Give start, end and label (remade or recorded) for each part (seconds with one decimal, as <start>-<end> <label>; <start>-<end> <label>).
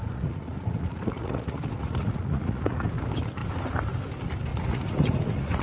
0.0-3.0 remade; 3.0-4.5 recorded; 4.5-5.6 remade